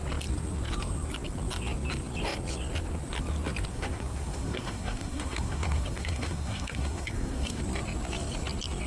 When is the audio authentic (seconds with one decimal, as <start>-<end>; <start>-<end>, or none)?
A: 0.0-3.7; 7.6-8.9